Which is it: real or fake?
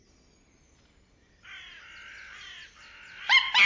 real